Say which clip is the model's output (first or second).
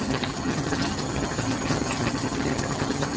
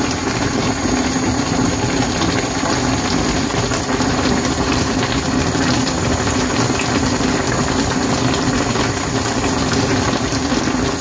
first